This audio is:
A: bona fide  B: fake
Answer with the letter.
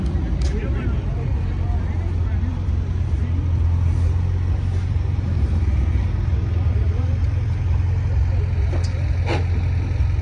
A